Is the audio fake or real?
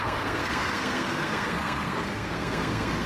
fake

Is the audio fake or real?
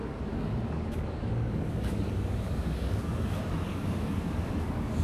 fake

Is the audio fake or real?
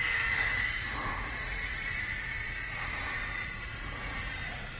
fake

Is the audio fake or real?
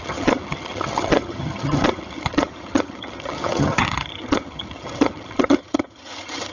fake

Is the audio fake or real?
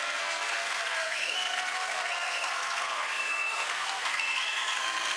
fake